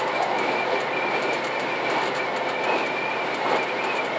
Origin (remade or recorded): recorded